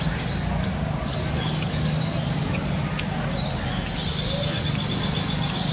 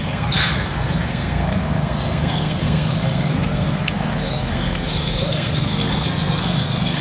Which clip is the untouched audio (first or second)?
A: first